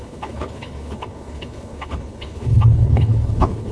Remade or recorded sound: remade